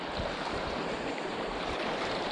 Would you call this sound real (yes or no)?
no